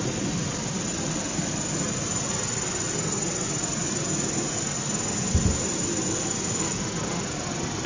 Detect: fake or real real